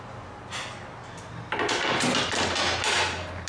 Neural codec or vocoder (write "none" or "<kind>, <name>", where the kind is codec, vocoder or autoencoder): none